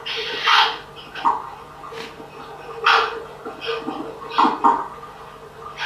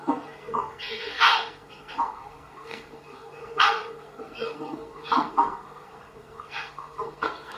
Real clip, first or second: first